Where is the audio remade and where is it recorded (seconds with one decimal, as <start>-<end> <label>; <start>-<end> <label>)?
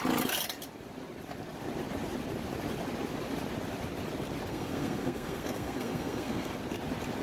0.0-4.5 recorded; 4.5-6.5 remade; 6.5-7.2 recorded